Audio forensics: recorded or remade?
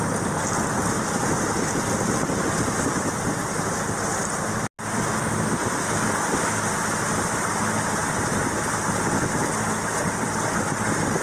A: recorded